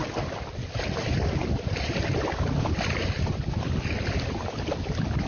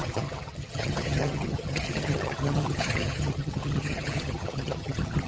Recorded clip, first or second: first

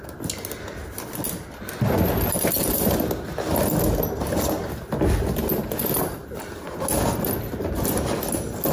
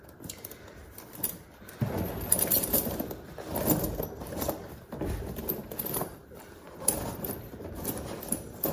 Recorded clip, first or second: first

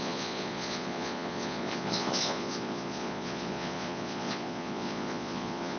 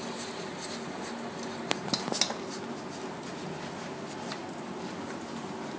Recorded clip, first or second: second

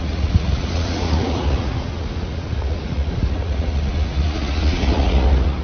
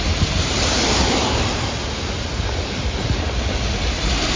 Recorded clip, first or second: second